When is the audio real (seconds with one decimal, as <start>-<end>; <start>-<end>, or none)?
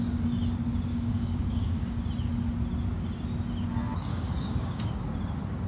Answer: 0.0-0.9; 2.0-4.1; 5.1-5.7